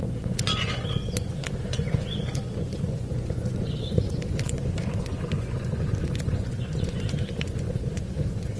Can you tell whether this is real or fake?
fake